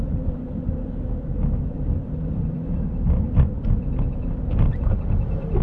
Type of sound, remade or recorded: recorded